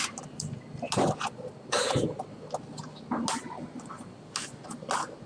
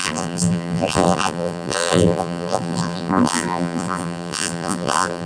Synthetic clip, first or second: second